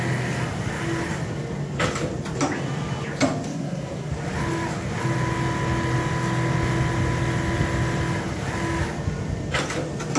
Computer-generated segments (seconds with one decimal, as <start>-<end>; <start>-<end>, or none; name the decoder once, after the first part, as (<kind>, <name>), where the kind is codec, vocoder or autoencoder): 3.5-4.1 (codec, SNAC)